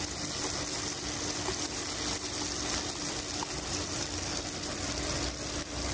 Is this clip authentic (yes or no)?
yes